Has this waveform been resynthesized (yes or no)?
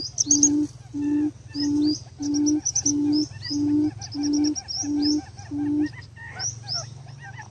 no